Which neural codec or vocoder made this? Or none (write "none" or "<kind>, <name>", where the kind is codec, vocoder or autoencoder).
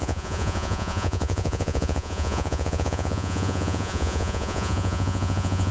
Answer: vocoder, Vocos